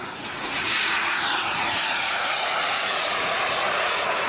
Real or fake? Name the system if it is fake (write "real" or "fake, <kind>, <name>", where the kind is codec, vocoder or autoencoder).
fake, vocoder, Vocos